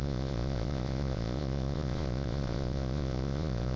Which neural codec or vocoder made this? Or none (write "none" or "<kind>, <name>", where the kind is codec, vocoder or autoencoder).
vocoder, Vocos